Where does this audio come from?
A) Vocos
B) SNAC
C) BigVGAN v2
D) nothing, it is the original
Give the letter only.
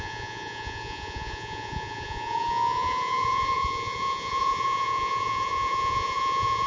A